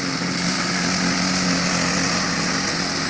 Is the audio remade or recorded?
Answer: recorded